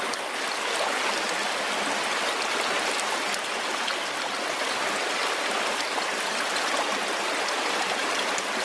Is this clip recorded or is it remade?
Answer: recorded